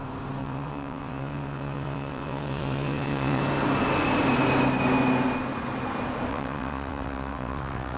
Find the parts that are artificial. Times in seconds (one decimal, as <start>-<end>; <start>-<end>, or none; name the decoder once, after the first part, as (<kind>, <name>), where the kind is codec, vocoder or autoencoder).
0.4-3.4 (vocoder, WaveNeXt); 6.3-8.0